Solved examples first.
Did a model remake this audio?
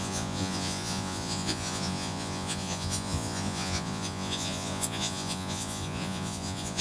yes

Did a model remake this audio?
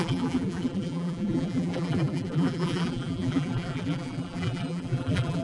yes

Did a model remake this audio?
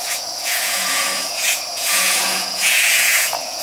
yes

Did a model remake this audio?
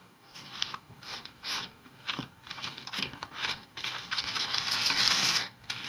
yes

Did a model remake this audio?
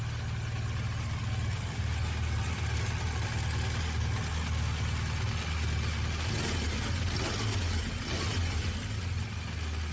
no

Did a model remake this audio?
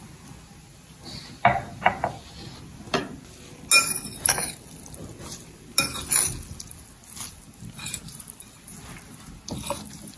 no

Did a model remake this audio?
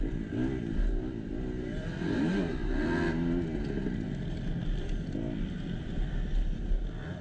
no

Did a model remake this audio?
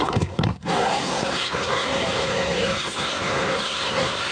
yes